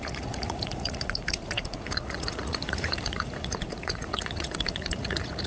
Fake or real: fake